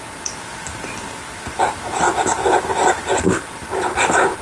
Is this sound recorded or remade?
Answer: recorded